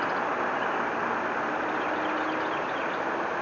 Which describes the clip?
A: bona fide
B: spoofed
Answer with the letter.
A